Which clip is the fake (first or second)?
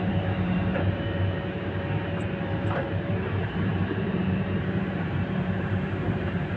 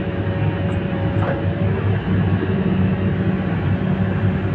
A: first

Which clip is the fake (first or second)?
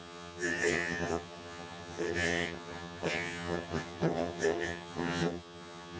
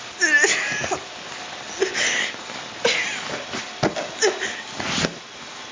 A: first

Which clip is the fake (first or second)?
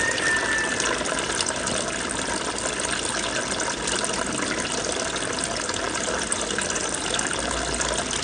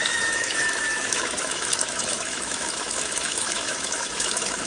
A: second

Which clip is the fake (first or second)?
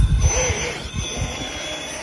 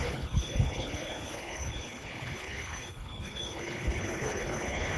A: second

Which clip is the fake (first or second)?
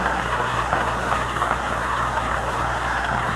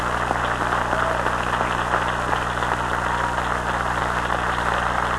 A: first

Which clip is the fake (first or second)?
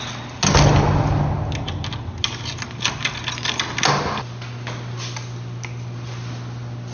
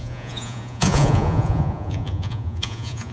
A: second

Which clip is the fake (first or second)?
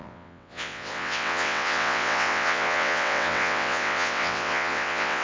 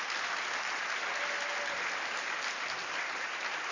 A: first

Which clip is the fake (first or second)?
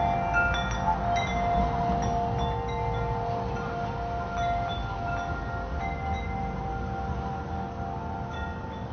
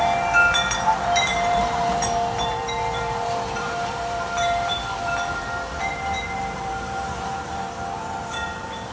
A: second